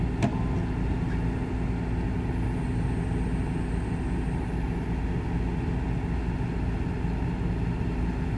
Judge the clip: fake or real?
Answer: real